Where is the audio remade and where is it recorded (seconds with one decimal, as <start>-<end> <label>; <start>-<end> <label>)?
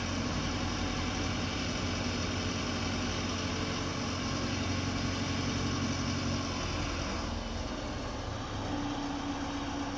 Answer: 0.0-10.0 recorded